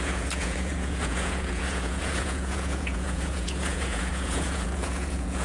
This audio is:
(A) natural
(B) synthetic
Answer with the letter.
B